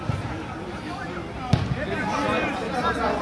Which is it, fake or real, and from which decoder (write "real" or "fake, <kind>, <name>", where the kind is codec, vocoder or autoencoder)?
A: real